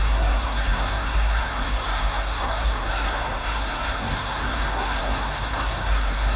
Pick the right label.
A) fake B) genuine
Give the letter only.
A